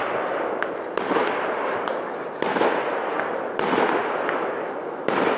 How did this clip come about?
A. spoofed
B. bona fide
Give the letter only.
B